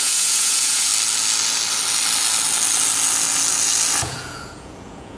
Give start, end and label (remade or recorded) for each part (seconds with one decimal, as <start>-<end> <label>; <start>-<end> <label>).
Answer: 0.0-0.9 remade; 0.9-4.0 recorded; 4.0-5.2 remade